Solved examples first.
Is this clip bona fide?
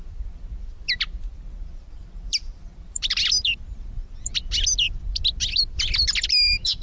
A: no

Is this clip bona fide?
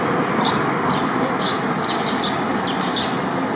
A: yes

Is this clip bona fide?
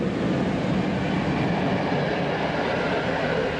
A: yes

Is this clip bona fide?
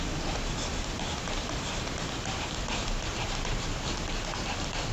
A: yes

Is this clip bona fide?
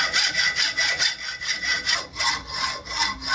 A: yes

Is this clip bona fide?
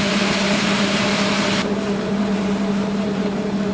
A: no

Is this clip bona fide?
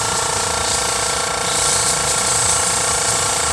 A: yes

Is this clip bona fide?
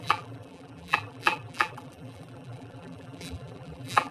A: no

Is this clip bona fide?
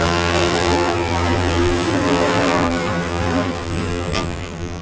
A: no